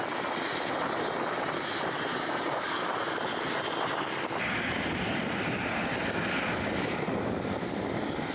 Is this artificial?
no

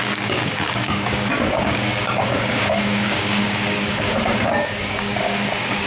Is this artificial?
yes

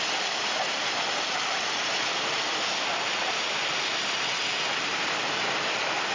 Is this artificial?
no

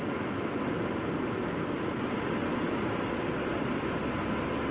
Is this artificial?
no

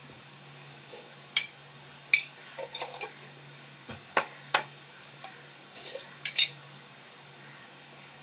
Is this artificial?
yes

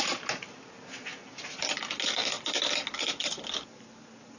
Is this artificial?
no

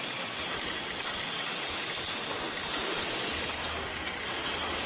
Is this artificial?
no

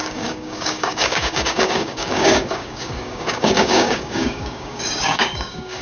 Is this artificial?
yes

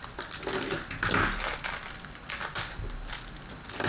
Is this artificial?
no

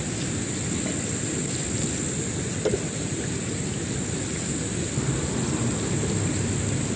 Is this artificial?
no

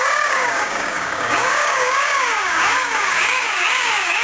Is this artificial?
yes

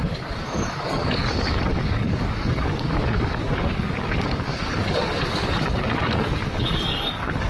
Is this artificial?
yes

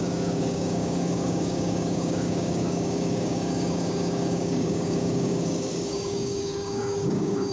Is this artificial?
yes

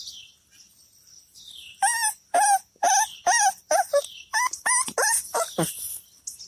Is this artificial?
no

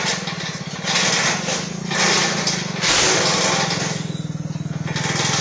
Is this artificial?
no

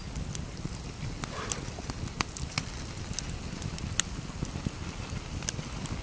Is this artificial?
no